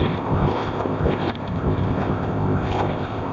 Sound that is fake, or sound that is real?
fake